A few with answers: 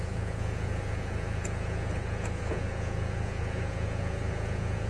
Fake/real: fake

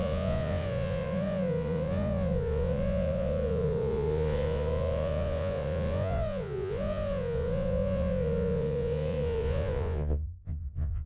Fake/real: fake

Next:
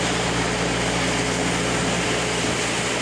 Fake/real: real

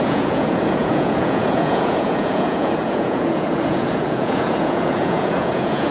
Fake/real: fake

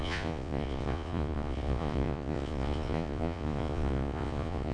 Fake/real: fake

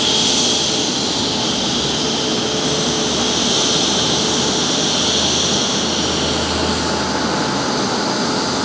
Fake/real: real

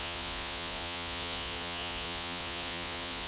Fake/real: fake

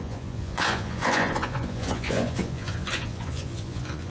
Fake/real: fake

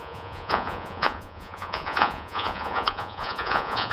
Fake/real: fake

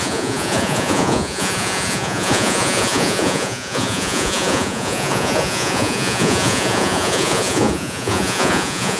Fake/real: fake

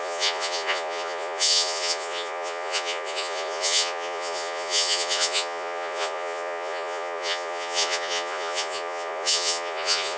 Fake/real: fake